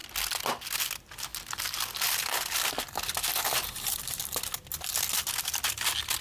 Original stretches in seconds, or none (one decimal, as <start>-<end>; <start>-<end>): 0.0-6.2